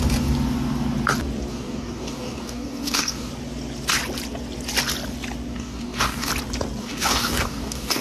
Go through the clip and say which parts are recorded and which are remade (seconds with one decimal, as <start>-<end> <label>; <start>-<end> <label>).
0.0-1.5 recorded; 1.5-3.3 remade; 3.3-5.5 recorded; 5.5-6.3 remade; 6.3-6.8 recorded; 6.8-8.0 remade